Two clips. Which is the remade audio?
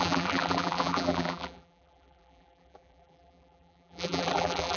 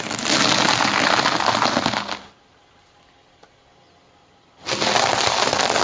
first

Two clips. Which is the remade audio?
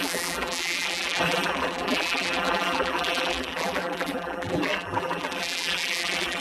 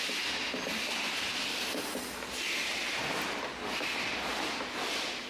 first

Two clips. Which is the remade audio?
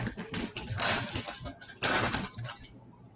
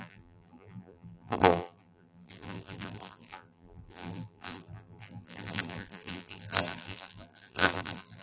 second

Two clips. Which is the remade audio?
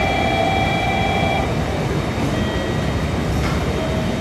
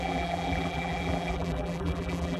second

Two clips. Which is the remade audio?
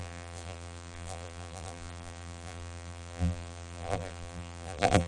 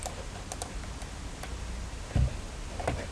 first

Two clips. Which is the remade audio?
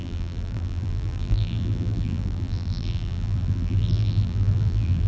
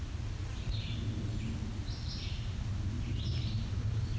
first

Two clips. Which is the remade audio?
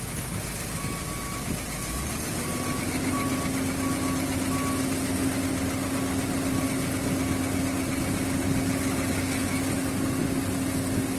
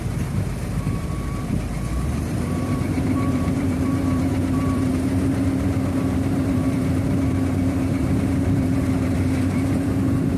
second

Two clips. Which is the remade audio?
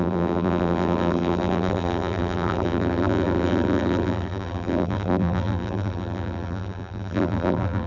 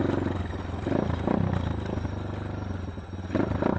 first